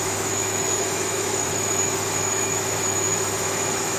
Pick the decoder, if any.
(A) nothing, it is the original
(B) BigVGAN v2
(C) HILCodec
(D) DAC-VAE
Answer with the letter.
D